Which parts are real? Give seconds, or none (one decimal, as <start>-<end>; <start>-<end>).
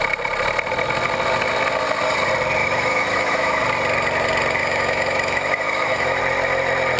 0.0-2.6; 3.6-4.6; 6.2-7.0